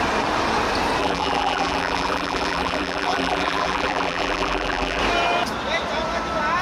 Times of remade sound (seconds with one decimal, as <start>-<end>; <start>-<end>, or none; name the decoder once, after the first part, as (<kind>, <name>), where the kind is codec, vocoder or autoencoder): 1.0-5.0 (vocoder, BigVGAN v2)